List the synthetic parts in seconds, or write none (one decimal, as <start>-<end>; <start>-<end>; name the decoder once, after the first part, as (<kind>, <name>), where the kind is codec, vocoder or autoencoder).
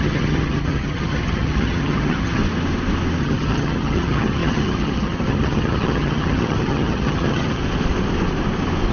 0.0-2.4 (vocoder, HiFi-GAN); 3.2-7.6